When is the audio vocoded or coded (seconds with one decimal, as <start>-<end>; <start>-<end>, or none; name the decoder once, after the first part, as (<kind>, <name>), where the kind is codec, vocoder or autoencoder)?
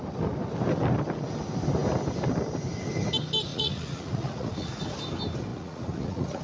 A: 3.5-4.8 (vocoder, Vocos); 5.5-6.4